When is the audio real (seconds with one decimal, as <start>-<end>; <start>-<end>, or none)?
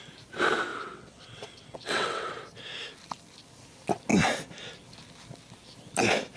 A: 0.0-0.7; 2.3-6.4